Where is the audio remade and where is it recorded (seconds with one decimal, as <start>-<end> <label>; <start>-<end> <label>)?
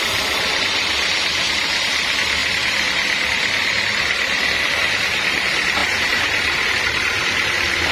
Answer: 0.0-7.9 remade